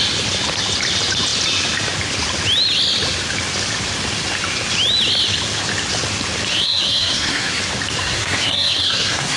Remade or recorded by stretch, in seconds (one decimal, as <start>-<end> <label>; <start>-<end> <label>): 0.0-6.5 recorded; 6.5-7.6 remade; 7.6-8.0 recorded; 8.0-9.4 remade